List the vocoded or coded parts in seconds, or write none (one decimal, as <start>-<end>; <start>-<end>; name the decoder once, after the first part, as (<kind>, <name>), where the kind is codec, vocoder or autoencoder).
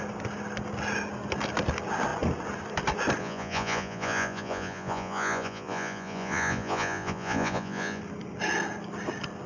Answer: 3.2-8.0 (vocoder, Vocos)